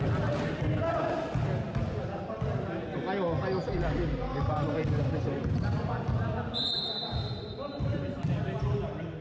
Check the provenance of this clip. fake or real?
real